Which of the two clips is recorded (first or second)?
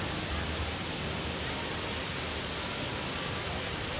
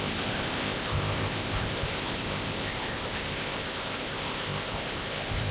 first